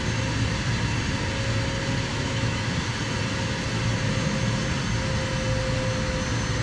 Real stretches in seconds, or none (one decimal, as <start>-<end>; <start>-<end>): 0.0-2.1; 2.7-6.6